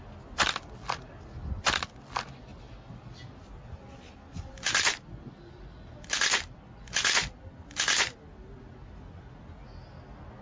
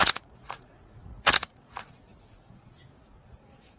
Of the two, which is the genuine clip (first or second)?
first